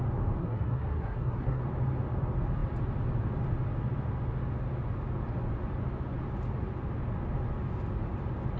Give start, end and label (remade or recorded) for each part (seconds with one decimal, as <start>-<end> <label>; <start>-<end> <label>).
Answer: 0.0-0.4 recorded; 0.4-1.6 remade; 1.6-8.6 recorded